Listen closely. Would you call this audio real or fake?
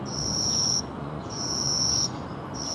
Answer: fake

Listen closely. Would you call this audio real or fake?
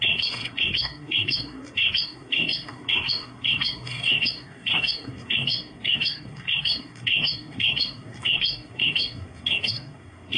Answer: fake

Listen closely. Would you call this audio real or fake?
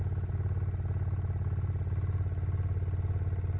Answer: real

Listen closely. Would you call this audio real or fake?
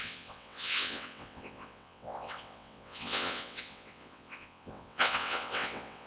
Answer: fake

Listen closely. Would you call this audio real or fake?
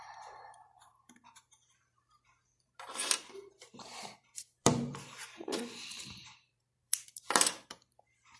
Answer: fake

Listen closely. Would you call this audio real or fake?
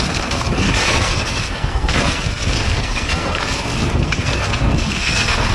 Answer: fake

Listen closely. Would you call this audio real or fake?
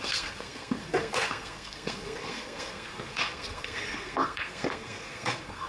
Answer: fake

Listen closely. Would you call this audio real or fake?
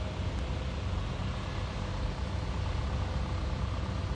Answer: real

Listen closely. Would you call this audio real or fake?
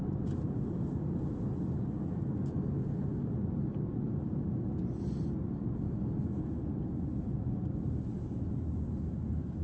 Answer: real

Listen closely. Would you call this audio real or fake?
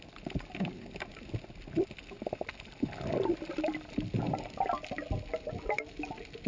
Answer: real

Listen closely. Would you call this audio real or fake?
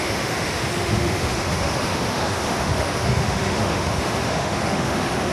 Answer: fake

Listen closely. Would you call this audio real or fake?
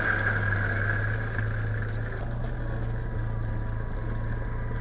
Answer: real